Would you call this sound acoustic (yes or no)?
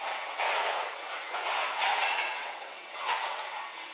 no